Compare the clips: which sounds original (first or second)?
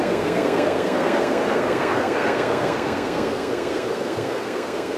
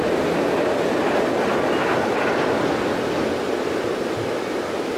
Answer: second